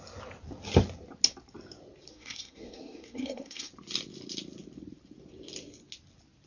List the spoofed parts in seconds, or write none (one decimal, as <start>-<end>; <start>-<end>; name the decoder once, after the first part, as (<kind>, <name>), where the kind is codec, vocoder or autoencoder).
2.1-3.7 (codec, SNAC)